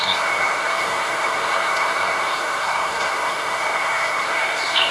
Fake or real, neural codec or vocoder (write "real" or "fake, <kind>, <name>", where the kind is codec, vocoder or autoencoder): fake, codec, SNAC